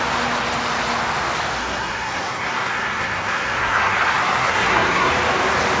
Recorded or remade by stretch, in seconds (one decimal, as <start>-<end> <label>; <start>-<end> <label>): 0.0-1.6 recorded; 1.6-5.1 remade; 5.1-5.8 recorded